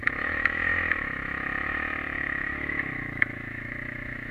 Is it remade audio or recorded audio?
remade